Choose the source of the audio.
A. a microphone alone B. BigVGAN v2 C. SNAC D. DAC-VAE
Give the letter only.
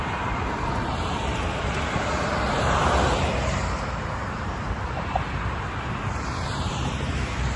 B